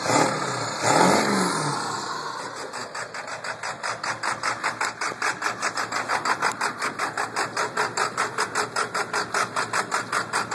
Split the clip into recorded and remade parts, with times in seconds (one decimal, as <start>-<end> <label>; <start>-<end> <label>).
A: 0.0-10.5 recorded